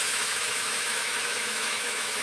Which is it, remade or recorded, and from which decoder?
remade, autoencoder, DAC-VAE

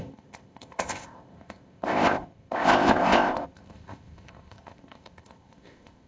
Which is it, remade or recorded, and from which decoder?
remade, codec, ZipCodec